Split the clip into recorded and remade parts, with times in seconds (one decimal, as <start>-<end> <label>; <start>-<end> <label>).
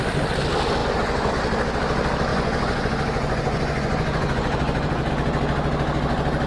0.0-0.8 recorded; 0.8-1.3 remade; 1.3-2.3 recorded; 2.3-5.1 remade; 5.1-6.5 recorded